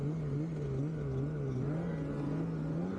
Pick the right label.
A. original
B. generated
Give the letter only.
A